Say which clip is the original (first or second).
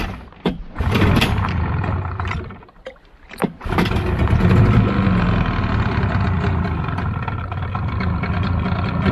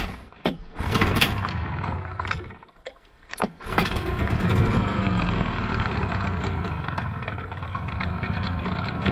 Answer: first